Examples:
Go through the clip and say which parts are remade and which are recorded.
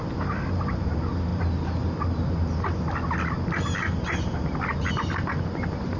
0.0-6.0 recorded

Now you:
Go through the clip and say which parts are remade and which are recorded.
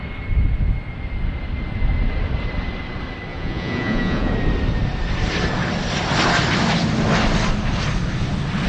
0.0-3.3 recorded; 3.3-4.3 remade; 4.3-8.7 recorded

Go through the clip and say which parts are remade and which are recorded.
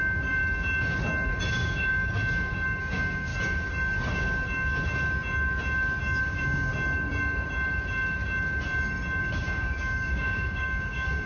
0.0-0.4 remade; 0.4-1.5 recorded; 1.5-2.0 remade; 2.0-2.8 recorded; 2.8-3.3 remade; 3.3-6.2 recorded; 6.2-6.7 remade; 6.7-9.2 recorded; 9.2-11.3 remade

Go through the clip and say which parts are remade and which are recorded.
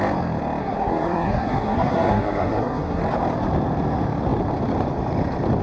0.0-0.6 recorded; 0.6-3.0 remade; 3.0-5.6 recorded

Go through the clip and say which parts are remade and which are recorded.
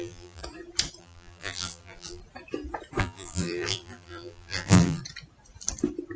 0.0-0.4 remade; 0.4-1.0 recorded; 1.0-2.2 remade; 2.2-3.0 recorded; 3.0-5.0 remade; 5.0-6.2 recorded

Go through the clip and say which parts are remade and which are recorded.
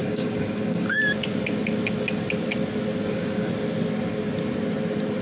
0.0-1.0 remade; 1.0-3.0 recorded; 3.0-3.5 remade; 3.5-5.2 recorded